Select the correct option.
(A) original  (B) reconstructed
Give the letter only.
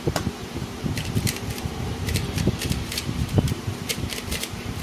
B